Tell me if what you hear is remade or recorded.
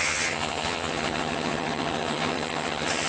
remade